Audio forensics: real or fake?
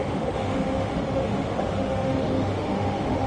fake